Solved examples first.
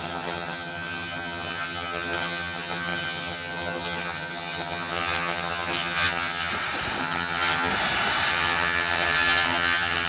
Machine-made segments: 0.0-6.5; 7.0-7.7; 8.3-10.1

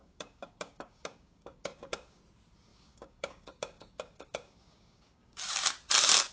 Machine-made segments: 0.0-2.2; 2.7-5.4

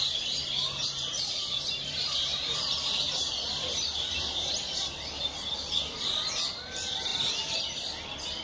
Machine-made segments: 0.4-1.3; 2.3-4.5; 7.1-7.6

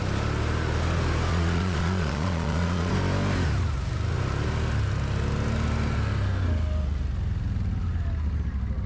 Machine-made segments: 1.3-2.9